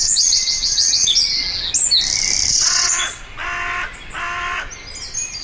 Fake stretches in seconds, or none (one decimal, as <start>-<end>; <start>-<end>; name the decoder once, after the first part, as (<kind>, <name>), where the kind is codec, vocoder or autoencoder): 0.0-1.4 (vocoder, WaveNeXt); 2.5-3.2